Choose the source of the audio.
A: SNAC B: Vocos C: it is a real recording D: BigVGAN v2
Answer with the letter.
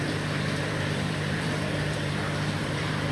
D